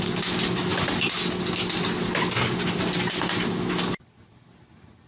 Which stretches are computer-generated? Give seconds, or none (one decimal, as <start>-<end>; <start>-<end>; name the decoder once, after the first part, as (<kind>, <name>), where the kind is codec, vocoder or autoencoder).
none